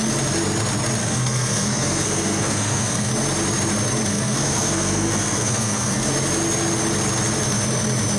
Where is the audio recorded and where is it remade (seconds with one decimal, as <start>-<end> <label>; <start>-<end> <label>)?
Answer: 0.0-1.0 recorded; 1.0-3.1 remade; 3.1-4.1 recorded; 4.1-6.1 remade; 6.1-8.2 recorded

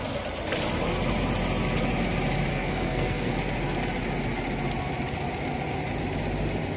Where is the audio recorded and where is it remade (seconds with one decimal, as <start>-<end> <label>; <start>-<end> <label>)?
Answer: 0.0-2.5 recorded; 2.5-3.3 remade; 3.3-6.8 recorded